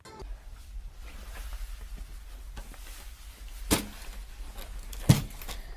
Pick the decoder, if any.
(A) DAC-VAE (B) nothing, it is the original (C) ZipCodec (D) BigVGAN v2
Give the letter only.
B